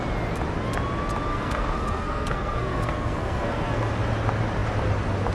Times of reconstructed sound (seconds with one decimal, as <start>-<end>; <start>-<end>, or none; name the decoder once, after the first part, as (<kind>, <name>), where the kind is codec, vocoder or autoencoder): 1.3-3.9 (codec, SNAC)